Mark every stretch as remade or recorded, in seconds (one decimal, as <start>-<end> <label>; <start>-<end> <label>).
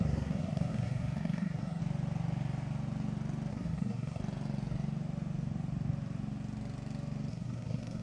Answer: 0.0-1.8 remade; 1.8-3.5 recorded; 3.5-4.2 remade; 4.2-7.3 recorded; 7.3-8.0 remade